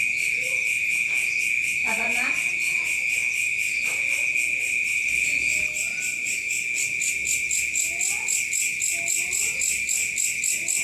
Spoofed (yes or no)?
no